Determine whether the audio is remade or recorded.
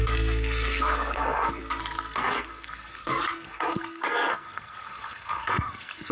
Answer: remade